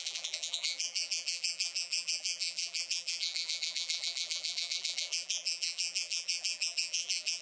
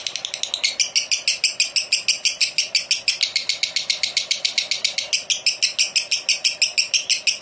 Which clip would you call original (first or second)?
second